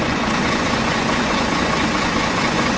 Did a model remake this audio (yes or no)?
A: yes